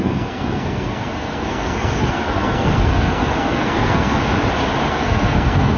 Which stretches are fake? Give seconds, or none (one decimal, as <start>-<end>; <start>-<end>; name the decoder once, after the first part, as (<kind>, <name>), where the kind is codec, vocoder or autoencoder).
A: 0.0-4.3 (codec, SNAC); 4.9-5.8